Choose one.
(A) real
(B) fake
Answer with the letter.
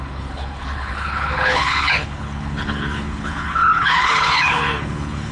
B